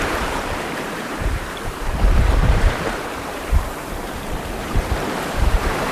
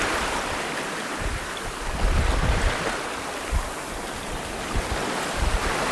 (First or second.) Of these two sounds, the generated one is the first